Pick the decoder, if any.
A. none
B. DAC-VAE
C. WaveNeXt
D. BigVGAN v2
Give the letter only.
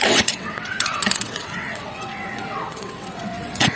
C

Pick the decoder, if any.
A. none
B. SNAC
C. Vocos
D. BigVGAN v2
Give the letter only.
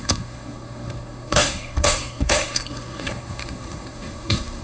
B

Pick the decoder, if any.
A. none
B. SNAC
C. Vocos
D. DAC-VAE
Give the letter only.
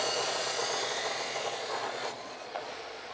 C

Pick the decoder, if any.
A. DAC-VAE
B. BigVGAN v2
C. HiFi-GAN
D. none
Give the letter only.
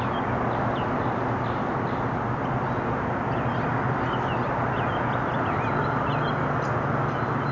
D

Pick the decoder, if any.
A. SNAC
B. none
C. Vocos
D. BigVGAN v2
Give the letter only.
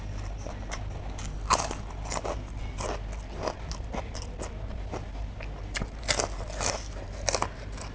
B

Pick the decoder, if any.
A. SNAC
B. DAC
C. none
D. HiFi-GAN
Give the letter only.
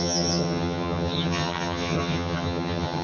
D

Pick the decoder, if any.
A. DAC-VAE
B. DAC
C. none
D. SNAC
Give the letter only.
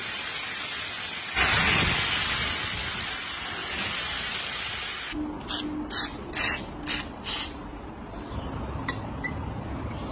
C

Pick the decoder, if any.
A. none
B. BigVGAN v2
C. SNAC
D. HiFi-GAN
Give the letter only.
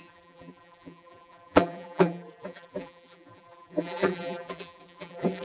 B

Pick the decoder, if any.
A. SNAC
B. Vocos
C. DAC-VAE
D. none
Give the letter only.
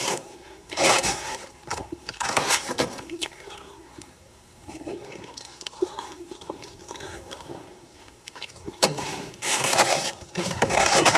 A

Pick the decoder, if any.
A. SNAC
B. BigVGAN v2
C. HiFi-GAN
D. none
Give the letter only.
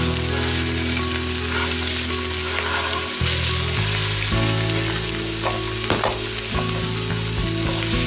D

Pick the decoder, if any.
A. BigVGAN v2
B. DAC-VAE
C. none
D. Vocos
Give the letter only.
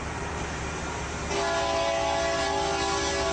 C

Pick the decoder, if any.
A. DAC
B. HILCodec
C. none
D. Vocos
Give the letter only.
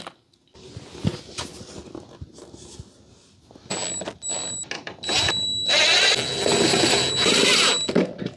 C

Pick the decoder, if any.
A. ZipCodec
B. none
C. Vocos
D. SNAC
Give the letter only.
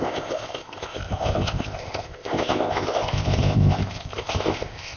A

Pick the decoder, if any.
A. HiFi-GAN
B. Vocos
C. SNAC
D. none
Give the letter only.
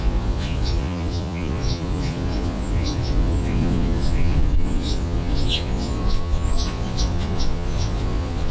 B